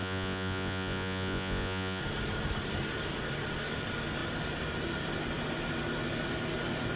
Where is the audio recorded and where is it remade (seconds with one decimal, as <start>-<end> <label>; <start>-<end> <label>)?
0.0-2.0 remade; 2.0-7.0 recorded